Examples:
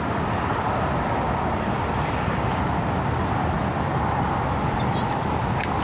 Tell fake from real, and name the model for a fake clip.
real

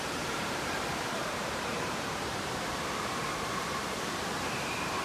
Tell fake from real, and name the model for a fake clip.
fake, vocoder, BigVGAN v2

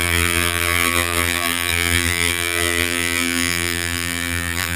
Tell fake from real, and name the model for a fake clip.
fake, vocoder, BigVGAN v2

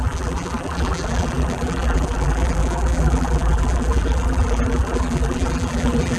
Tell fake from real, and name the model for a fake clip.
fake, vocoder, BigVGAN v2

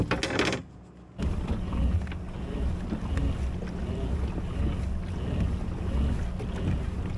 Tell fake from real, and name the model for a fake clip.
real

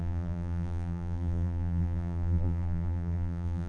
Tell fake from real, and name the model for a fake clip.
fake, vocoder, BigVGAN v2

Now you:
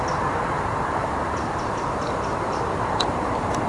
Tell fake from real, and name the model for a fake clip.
fake, vocoder, BigVGAN v2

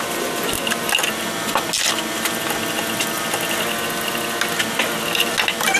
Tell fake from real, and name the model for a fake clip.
real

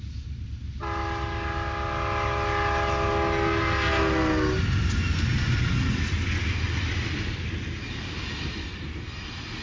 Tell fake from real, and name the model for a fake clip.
real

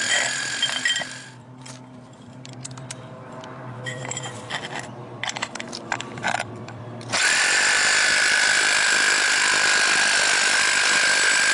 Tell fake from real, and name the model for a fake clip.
fake, vocoder, BigVGAN v2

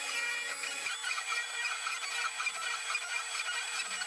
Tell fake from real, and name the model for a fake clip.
real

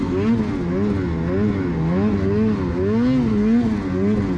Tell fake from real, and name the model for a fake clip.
real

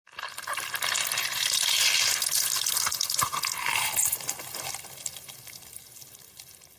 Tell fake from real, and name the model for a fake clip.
fake, vocoder, BigVGAN v2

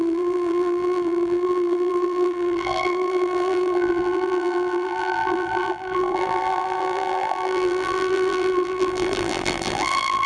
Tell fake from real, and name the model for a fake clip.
fake, vocoder, BigVGAN v2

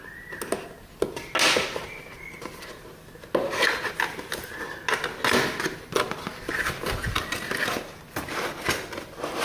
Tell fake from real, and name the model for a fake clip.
real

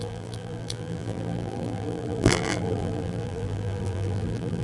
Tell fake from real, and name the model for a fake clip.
fake, vocoder, BigVGAN v2